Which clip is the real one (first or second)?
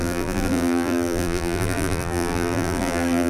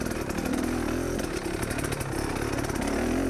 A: second